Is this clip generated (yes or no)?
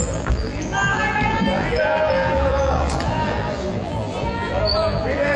yes